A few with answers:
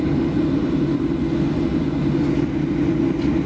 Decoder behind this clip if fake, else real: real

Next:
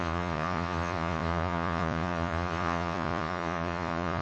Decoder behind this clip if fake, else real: fake, vocoder, Vocos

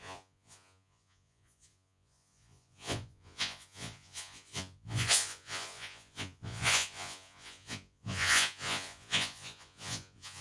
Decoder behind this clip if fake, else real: fake, vocoder, Vocos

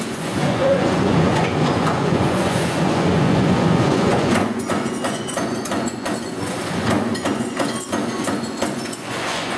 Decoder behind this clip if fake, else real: fake, vocoder, Vocos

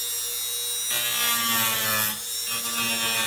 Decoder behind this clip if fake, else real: real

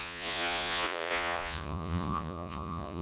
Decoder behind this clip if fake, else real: fake, vocoder, Vocos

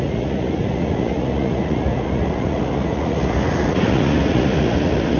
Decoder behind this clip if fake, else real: fake, vocoder, Vocos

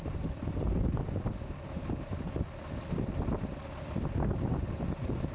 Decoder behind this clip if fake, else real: real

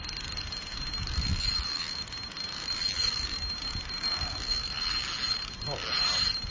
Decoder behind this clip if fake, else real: real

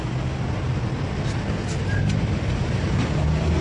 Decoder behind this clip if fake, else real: real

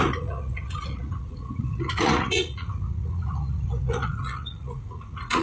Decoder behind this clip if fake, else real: fake, vocoder, Vocos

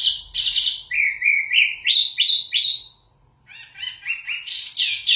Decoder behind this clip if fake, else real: real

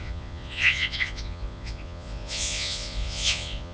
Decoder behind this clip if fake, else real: fake, vocoder, Vocos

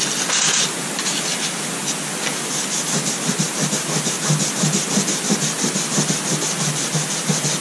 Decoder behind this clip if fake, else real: real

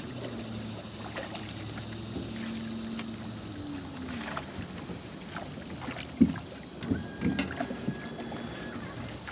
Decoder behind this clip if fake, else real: real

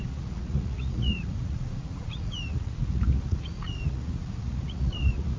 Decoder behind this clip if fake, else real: fake, vocoder, Vocos